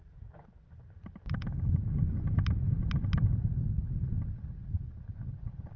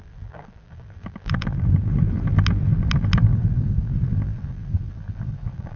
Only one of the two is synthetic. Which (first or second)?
second